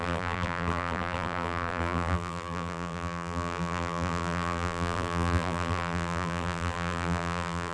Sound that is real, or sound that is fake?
fake